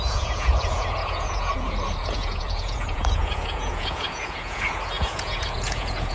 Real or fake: fake